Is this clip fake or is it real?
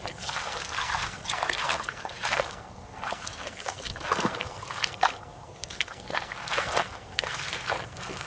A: fake